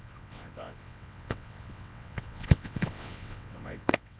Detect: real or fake fake